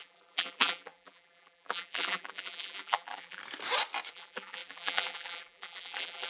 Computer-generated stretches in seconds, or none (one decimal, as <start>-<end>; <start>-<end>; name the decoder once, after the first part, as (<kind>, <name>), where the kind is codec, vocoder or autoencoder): 0.0-3.4 (vocoder, BigVGAN v2); 4.1-6.3